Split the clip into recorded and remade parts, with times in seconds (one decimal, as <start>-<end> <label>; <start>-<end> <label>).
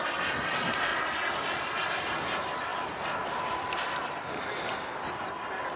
0.0-5.8 recorded